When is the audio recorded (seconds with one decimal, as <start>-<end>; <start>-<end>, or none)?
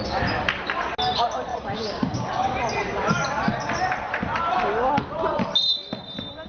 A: 0.0-1.5; 2.3-6.5